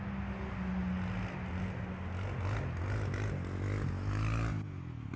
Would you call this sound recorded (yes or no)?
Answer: yes